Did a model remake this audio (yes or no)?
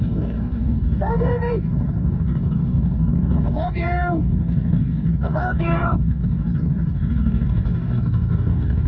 yes